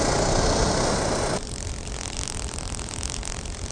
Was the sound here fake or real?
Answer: real